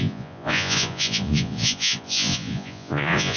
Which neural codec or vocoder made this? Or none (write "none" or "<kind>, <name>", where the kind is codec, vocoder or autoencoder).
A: vocoder, Vocos